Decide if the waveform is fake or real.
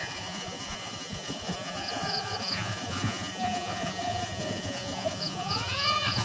fake